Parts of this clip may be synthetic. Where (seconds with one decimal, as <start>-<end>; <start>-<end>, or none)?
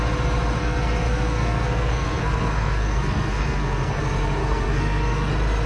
0.6-4.0; 4.4-5.3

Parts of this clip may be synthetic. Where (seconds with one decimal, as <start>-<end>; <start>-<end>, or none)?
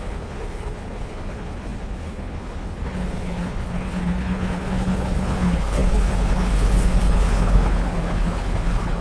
0.0-9.0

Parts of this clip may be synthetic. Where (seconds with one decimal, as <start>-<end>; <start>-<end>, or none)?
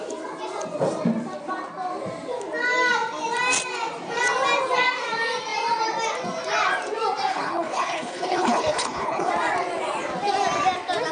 7.3-9.3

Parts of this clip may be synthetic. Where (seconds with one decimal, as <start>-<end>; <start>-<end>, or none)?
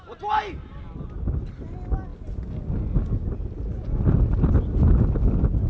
none